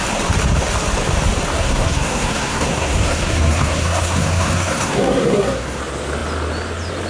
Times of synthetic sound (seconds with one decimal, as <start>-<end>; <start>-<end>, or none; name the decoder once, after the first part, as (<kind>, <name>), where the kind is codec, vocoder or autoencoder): 1.5-5.8 (codec, SNAC)